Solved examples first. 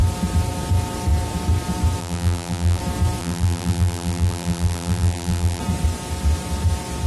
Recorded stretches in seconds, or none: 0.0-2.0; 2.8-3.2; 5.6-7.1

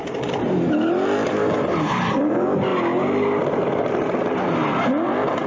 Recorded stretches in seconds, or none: 0.0-5.5

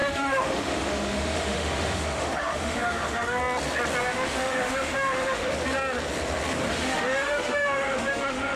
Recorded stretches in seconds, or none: 3.4-4.0; 5.5-6.7

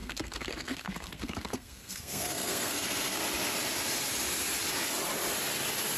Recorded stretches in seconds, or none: 3.2-6.0

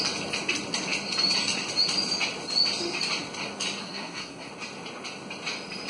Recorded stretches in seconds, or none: 0.0-3.8; 4.5-5.9